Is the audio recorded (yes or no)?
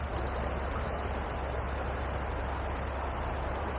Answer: yes